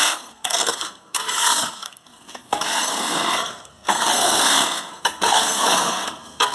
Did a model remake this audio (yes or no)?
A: yes